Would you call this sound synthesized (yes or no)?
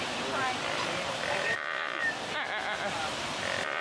no